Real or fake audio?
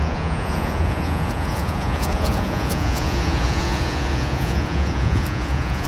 fake